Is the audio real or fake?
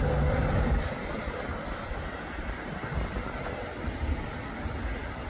real